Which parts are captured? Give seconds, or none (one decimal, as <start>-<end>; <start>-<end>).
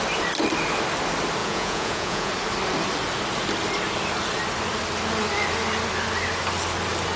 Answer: 0.0-1.4; 2.3-7.2